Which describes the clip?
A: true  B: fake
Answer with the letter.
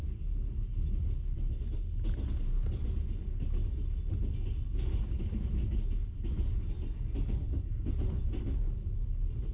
A